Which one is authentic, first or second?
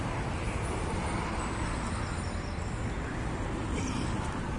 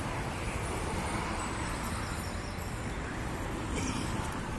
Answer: first